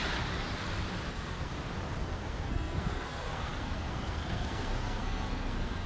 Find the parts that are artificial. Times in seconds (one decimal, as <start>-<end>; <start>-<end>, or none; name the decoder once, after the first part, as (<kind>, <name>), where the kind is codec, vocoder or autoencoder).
1.1-1.5 (codec, SNAC); 2.0-5.9

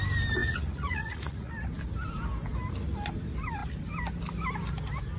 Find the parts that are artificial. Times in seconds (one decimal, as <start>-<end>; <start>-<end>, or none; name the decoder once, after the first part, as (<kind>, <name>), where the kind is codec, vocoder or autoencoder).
0.4-1.5 (vocoder, Vocos)

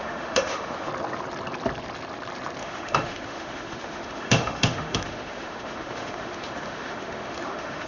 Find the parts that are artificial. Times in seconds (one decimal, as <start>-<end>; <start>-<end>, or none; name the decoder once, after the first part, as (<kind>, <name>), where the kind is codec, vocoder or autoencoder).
0.0-0.9 (autoencoder, DAC-VAE); 2.6-7.9